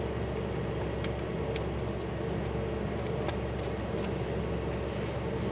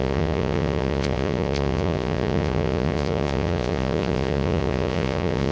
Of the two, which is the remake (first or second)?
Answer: second